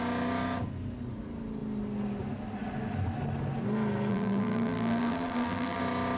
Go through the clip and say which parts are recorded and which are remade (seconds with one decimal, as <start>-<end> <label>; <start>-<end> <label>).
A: 0.0-4.1 recorded; 4.1-5.8 remade; 5.8-6.2 recorded